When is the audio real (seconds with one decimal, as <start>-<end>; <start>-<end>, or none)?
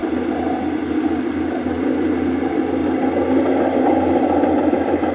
0.0-5.1